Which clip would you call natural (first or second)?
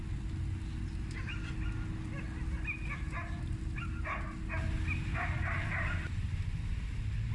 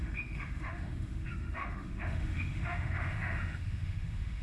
first